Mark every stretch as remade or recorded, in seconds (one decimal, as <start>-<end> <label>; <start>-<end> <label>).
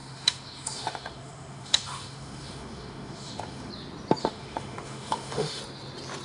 0.0-3.7 remade; 3.7-4.2 recorded; 4.2-5.6 remade; 5.6-6.2 recorded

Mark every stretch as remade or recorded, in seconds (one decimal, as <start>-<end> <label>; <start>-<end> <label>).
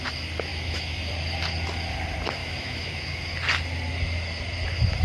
0.0-0.5 recorded; 0.5-1.1 remade; 1.1-2.4 recorded; 2.4-3.2 remade; 3.2-5.0 recorded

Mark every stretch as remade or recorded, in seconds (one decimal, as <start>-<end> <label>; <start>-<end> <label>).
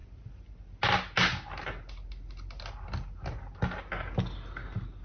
0.0-5.0 recorded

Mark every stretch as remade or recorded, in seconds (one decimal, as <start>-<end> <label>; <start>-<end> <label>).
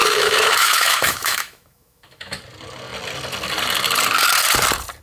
0.0-2.4 remade; 2.4-5.0 recorded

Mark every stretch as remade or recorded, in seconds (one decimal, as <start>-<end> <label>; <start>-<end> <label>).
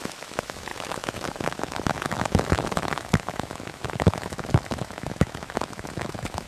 0.0-6.5 remade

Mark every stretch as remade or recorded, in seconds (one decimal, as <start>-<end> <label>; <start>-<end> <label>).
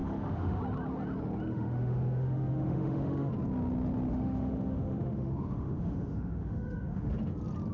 0.0-0.6 remade; 0.6-1.5 recorded; 1.5-3.3 remade; 3.3-4.1 recorded; 4.1-7.1 remade; 7.1-7.7 recorded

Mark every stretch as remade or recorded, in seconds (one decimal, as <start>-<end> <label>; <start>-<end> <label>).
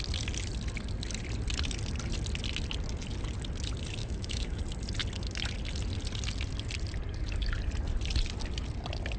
0.0-4.0 recorded; 4.0-4.6 remade; 4.6-9.2 recorded